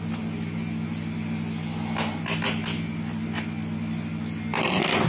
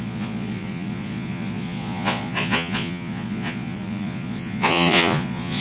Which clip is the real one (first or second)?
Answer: first